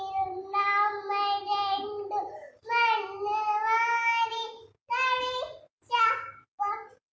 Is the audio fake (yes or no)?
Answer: no